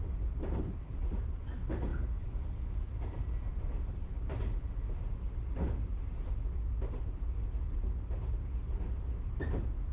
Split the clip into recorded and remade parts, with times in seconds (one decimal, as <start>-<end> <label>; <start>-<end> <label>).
0.0-9.9 recorded